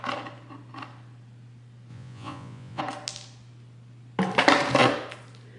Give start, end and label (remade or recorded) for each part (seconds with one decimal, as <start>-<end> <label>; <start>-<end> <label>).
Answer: 0.0-1.9 recorded; 1.9-2.8 remade; 2.8-5.6 recorded